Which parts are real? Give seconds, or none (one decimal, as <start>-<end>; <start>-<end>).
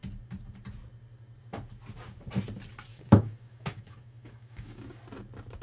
0.0-2.9; 4.9-5.6